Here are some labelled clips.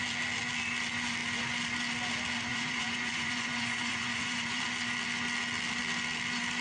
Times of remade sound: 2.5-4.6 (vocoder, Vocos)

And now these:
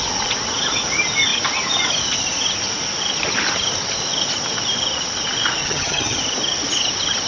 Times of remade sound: 5.6-6.2 (vocoder, HiFi-GAN)